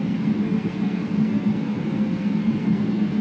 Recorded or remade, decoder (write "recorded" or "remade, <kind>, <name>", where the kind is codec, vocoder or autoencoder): remade, codec, SNAC